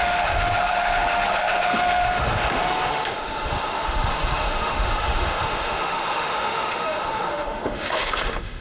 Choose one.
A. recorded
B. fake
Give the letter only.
B